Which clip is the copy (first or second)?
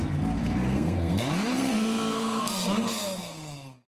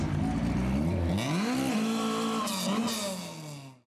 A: first